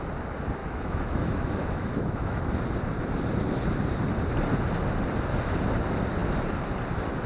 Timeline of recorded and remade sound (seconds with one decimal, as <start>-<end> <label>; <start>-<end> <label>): 0.0-0.6 recorded; 0.6-2.6 remade; 2.6-7.3 recorded